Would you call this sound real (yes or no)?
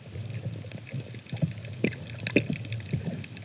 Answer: yes